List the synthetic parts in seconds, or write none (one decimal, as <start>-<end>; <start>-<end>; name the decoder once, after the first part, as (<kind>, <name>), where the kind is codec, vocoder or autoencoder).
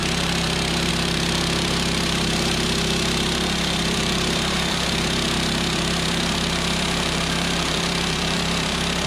0.0-9.1 (vocoder, BigVGAN v2)